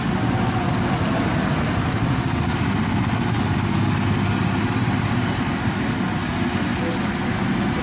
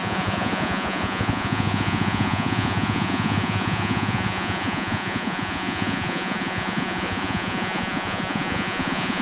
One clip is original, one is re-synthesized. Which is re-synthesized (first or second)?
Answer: second